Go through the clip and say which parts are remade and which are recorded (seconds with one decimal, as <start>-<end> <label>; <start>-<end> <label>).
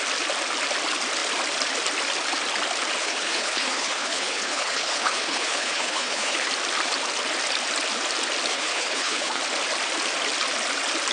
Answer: 0.0-3.0 recorded; 3.0-6.5 remade; 6.5-8.5 recorded; 8.5-9.4 remade; 9.4-11.1 recorded